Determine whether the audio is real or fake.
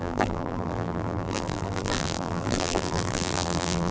fake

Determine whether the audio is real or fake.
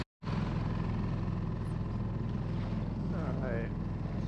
real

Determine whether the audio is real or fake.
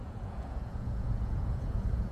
fake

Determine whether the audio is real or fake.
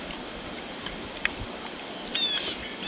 real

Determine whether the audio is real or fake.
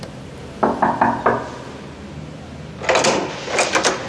real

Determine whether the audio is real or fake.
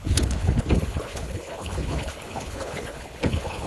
fake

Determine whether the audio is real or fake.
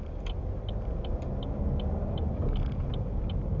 real